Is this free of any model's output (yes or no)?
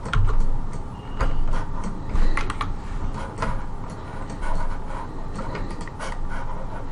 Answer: yes